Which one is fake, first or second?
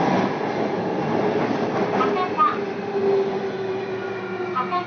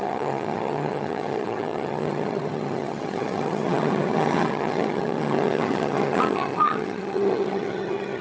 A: second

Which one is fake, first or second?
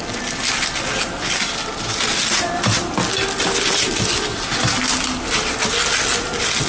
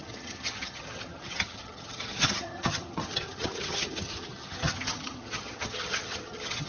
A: second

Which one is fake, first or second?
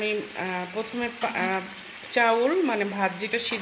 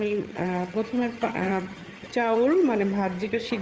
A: second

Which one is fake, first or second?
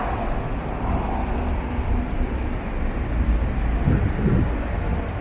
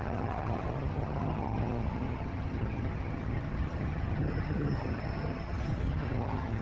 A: second